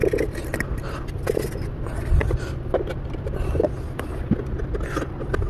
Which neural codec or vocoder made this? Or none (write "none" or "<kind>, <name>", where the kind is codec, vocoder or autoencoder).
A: none